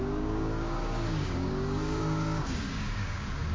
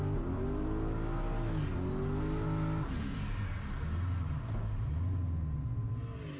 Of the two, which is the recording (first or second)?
second